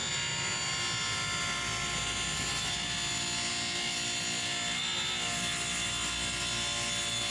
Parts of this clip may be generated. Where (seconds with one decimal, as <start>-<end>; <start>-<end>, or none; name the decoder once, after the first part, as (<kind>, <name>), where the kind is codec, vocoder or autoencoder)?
none